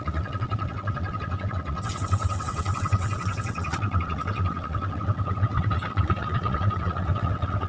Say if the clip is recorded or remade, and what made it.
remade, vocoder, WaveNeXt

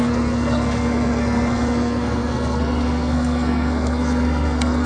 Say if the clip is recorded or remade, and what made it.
remade, codec, SNAC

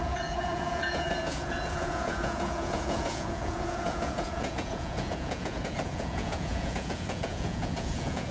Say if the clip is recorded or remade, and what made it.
remade, vocoder, Vocos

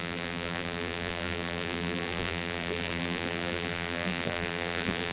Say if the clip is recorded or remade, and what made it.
remade, vocoder, BigVGAN v2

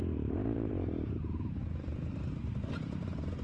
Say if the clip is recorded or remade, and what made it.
remade, vocoder, BigVGAN v2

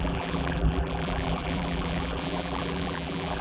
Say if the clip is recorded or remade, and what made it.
remade, vocoder, BigVGAN v2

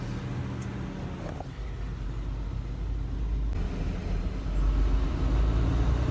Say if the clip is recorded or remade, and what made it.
recorded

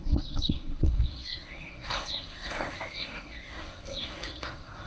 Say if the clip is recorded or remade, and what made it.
remade, codec, SNAC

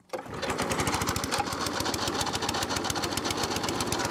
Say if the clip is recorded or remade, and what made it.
recorded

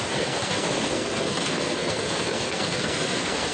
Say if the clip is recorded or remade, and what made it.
remade, codec, SNAC